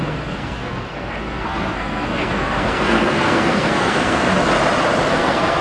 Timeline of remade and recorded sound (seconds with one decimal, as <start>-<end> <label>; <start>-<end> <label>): 0.0-4.3 remade; 4.3-5.1 recorded; 5.1-5.6 remade